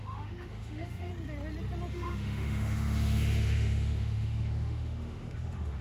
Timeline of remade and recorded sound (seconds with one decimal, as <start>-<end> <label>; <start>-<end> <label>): 0.0-1.1 remade; 1.1-1.9 recorded; 1.9-5.8 remade